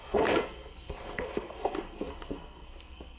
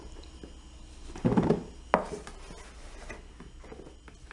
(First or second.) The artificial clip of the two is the first